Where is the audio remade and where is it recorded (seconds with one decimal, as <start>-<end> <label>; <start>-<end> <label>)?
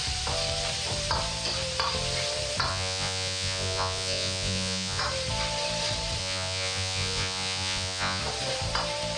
0.0-2.7 recorded; 2.7-5.0 remade; 5.0-6.2 recorded; 6.2-8.2 remade; 8.2-9.2 recorded